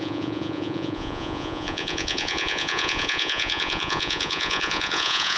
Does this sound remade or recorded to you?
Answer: remade